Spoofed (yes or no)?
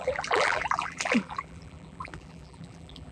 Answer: yes